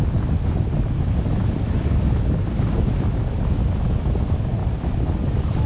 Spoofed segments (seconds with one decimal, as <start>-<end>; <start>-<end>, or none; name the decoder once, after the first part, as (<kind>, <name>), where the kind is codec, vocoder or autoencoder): none

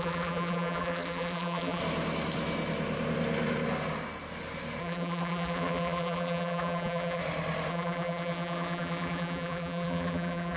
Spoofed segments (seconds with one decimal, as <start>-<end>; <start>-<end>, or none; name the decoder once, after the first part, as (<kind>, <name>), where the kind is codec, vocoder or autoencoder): 0.0-1.8 (vocoder, BigVGAN v2); 4.8-7.2; 7.7-10.6

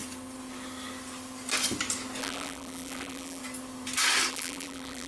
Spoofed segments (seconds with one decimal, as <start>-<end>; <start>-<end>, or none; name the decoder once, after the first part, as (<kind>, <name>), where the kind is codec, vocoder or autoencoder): 2.2-3.4 (vocoder, BigVGAN v2); 4.3-5.1

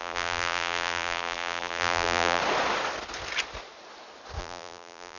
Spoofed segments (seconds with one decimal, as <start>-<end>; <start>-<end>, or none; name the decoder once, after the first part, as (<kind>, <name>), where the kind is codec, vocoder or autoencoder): 0.0-2.4 (vocoder, BigVGAN v2); 4.4-5.2

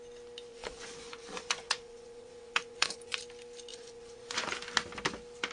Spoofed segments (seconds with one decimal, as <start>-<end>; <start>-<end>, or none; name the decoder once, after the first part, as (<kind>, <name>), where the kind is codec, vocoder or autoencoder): 0.5-3.2 (vocoder, Vocos); 3.7-4.5